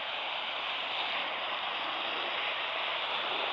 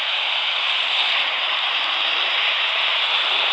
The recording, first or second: first